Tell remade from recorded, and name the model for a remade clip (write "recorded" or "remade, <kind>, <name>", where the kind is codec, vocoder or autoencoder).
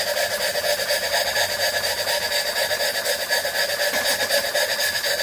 recorded